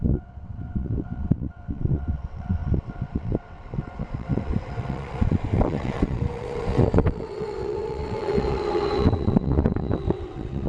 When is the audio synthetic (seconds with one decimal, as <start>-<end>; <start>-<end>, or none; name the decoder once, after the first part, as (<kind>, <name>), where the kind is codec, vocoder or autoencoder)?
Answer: 0.0-10.7 (vocoder, WaveNeXt)